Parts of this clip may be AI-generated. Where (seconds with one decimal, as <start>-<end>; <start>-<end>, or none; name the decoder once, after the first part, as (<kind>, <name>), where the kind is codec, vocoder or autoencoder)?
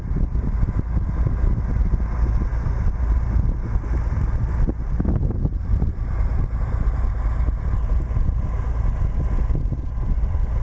none